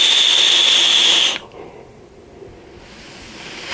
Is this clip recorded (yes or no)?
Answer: yes